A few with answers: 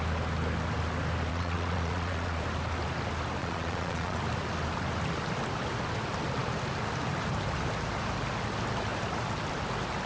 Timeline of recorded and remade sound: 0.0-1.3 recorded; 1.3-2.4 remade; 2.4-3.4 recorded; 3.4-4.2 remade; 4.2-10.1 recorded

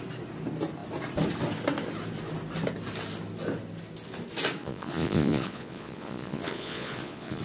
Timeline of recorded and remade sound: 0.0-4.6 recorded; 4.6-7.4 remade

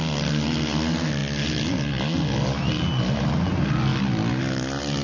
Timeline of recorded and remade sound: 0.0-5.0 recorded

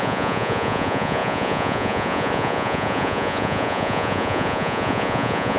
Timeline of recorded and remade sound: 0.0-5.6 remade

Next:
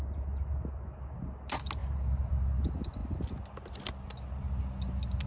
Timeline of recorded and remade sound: 0.0-5.3 recorded

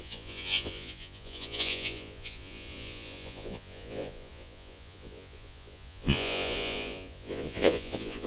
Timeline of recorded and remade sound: 0.0-8.3 remade

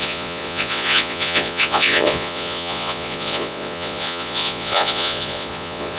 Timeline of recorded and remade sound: 0.0-6.0 remade

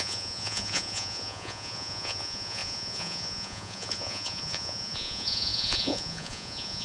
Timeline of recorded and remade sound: 0.0-6.8 remade